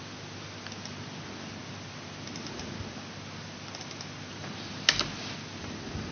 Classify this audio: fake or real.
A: real